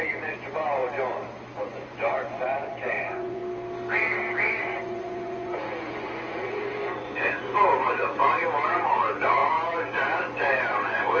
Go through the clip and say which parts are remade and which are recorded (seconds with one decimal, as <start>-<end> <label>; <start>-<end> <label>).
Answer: 0.0-0.8 remade; 0.8-1.5 recorded; 1.5-3.4 remade; 3.4-4.5 recorded; 4.5-11.2 remade